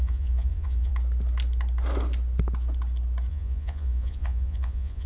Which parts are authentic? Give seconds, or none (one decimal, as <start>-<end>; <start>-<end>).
0.9-3.3